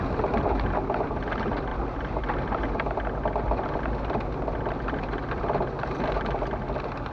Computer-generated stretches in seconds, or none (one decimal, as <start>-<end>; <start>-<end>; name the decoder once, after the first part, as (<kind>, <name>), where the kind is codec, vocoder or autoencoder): none

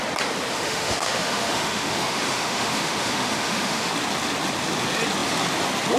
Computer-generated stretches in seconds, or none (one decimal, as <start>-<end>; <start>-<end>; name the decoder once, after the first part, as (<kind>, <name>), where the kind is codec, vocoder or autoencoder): 0.5-3.9 (autoencoder, DAC-VAE)

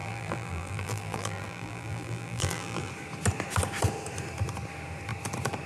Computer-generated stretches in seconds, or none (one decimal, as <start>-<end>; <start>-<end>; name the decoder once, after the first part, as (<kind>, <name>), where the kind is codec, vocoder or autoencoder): 0.0-2.9 (vocoder, BigVGAN v2)

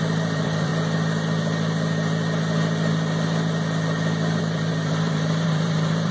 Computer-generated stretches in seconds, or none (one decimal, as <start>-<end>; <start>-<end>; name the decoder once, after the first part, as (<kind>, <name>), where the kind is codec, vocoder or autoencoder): 0.0-0.7 (vocoder, BigVGAN v2); 4.4-6.1

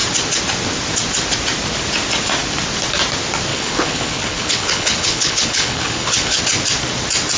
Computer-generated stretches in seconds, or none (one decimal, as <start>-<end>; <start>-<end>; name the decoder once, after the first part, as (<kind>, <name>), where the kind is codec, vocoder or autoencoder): 3.5-6.4 (codec, HILCodec)

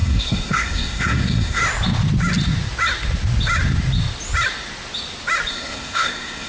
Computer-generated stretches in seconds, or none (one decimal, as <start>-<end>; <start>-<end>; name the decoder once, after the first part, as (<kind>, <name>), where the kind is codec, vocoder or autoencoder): 0.0-1.6 (codec, SNAC); 5.5-6.5